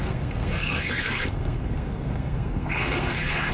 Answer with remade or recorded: remade